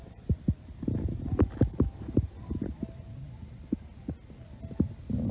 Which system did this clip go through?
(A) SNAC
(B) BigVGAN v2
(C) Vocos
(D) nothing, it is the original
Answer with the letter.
D